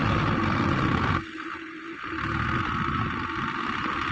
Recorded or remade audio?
recorded